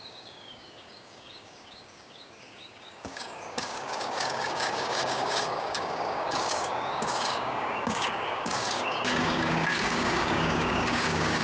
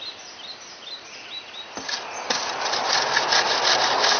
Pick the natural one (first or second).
second